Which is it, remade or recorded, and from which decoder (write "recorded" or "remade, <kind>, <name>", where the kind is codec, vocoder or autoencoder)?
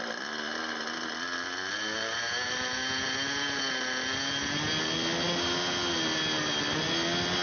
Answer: recorded